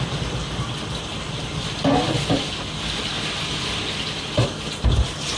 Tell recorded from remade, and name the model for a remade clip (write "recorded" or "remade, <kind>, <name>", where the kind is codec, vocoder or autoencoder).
recorded